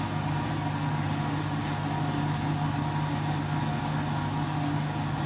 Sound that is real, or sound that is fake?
real